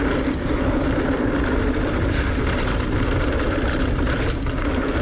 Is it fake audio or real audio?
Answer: real